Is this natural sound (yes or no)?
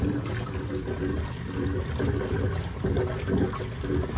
yes